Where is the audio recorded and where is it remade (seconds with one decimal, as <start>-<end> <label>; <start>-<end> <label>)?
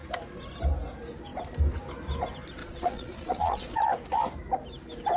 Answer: 0.0-2.6 recorded; 2.6-3.9 remade; 3.9-5.2 recorded